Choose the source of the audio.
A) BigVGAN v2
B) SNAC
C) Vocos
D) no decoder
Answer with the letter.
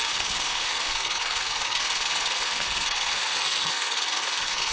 B